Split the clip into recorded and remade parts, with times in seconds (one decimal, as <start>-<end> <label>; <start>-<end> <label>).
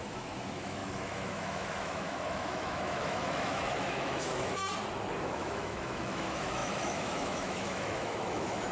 0.0-4.6 remade; 4.6-5.3 recorded; 5.3-8.7 remade